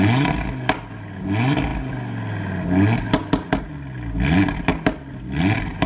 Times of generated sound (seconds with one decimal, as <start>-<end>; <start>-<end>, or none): none